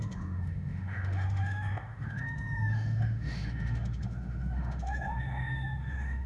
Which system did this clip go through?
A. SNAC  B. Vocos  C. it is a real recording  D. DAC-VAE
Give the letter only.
D